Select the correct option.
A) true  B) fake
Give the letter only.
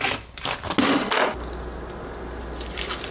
A